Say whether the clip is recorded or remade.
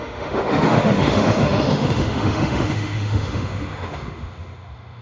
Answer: remade